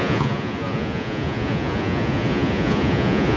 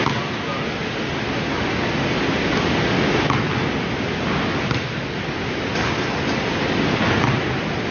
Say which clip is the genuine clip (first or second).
second